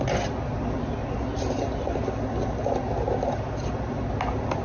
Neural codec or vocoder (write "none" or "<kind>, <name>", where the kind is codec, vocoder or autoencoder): none